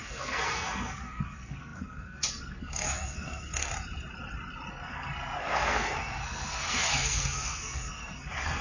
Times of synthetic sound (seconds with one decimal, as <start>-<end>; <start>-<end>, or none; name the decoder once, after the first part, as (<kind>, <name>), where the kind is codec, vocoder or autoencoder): 0.0-3.7 (codec, SNAC); 4.7-8.6